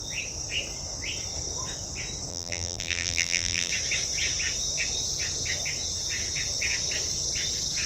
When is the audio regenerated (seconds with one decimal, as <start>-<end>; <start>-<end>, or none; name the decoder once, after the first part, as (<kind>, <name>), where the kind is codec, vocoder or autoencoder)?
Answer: 2.3-3.7 (vocoder, BigVGAN v2)